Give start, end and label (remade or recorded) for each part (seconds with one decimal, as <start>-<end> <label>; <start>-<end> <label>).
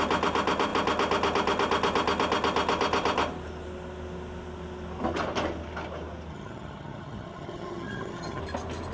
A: 0.0-6.3 recorded; 6.3-8.4 remade; 8.4-8.9 recorded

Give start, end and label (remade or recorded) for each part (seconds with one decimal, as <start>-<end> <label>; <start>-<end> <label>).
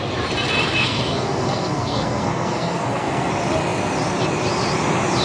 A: 0.0-0.8 recorded; 0.8-3.3 remade; 3.3-5.2 recorded